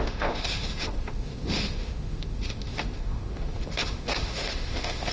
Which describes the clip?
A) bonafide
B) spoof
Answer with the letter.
B